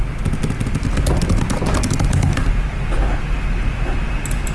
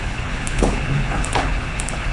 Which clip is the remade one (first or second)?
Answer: second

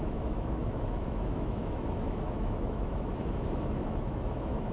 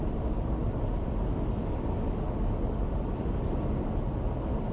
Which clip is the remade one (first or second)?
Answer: first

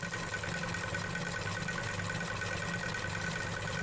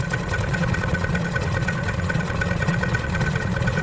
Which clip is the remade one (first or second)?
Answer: second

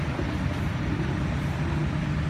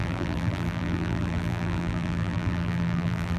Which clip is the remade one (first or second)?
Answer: second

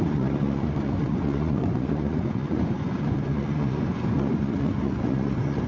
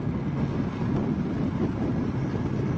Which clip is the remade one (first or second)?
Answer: first